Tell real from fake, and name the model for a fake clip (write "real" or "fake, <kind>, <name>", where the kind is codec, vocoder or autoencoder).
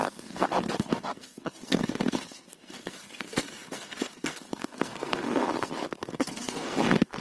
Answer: fake, codec, SNAC